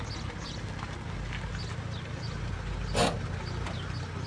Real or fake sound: real